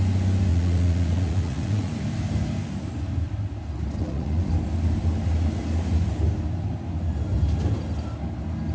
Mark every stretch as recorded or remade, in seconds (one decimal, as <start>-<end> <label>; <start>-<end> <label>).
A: 0.0-0.5 recorded; 0.5-1.9 remade; 1.9-4.0 recorded; 4.0-4.5 remade; 4.5-8.7 recorded